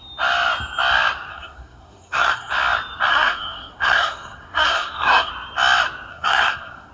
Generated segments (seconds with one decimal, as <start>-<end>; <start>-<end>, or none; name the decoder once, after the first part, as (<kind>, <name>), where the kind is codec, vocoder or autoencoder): 1.3-2.5 (codec, SNAC); 3.1-5.3; 6.1-6.9